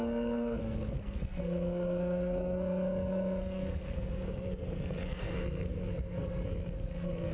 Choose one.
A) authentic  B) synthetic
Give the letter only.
B